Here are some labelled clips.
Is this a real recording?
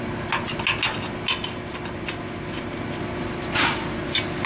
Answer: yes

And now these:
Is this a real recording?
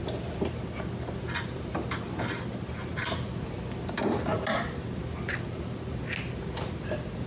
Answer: yes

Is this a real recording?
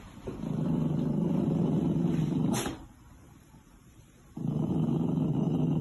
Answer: no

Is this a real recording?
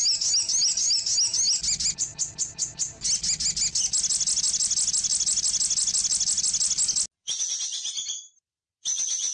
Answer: yes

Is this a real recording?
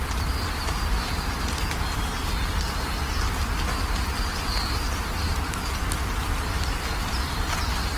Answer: yes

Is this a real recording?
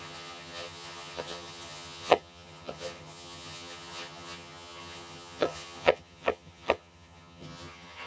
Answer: no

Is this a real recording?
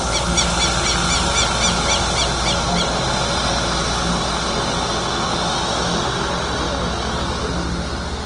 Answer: yes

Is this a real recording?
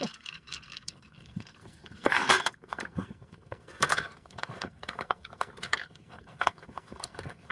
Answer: no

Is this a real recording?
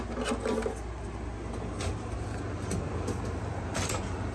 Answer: yes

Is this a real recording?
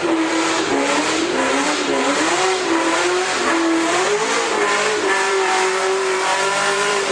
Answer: no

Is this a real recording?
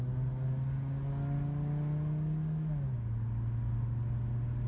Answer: yes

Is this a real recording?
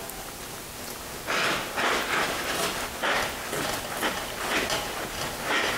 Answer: yes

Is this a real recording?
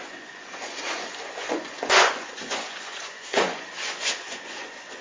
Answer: no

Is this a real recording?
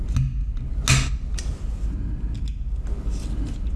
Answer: yes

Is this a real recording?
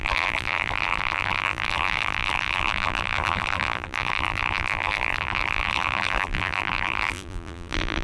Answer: no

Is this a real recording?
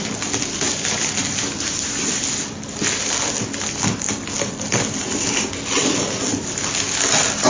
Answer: yes